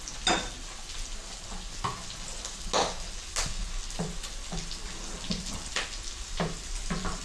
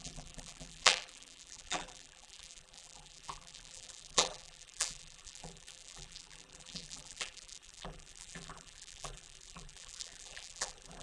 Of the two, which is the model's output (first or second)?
second